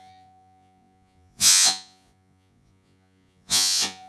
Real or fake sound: fake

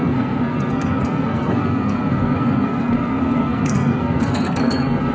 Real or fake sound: fake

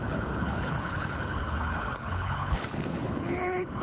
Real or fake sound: fake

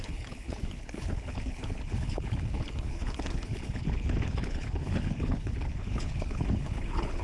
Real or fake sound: fake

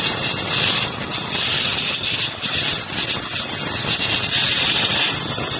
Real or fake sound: real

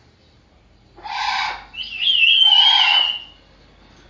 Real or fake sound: real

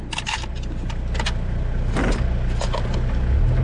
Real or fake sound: real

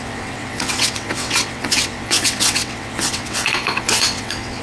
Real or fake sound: fake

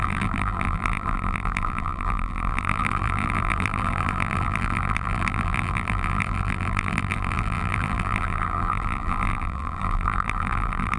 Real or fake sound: fake